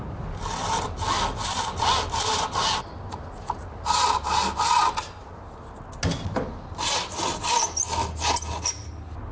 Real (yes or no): yes